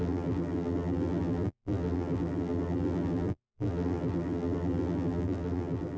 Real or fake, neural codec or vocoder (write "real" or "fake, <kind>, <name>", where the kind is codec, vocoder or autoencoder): fake, vocoder, BigVGAN v2